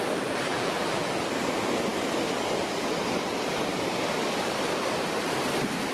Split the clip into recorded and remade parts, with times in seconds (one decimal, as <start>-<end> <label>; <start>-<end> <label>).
0.0-0.5 recorded; 0.5-1.1 remade; 1.1-5.9 recorded

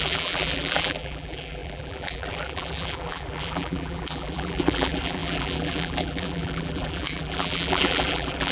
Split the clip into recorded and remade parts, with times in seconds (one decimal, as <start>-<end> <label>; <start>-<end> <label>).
0.0-8.5 remade

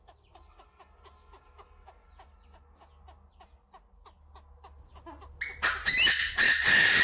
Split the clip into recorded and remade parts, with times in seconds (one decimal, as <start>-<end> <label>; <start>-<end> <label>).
0.0-5.8 recorded; 5.8-6.5 remade; 6.5-7.0 recorded

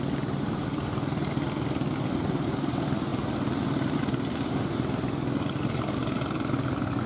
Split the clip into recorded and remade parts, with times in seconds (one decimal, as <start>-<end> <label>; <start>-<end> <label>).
0.0-7.1 recorded

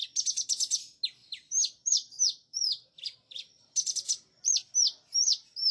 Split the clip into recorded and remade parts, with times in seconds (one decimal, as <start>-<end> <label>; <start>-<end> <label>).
0.0-1.2 recorded; 1.2-4.6 remade; 4.6-5.7 recorded

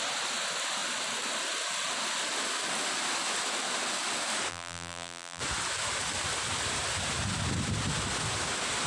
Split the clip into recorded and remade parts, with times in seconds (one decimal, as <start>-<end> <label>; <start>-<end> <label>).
0.0-4.5 recorded; 4.5-5.4 remade; 5.4-8.9 recorded